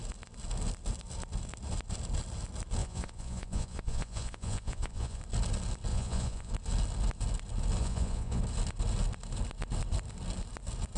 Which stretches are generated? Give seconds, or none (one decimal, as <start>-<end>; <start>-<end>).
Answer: 2.8-5.2; 5.9-6.5; 7.8-8.4